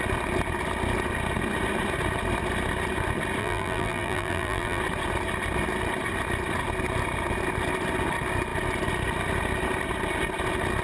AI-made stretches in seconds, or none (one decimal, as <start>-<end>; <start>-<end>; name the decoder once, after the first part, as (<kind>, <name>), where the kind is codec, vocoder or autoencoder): 3.4-4.8 (vocoder, BigVGAN v2)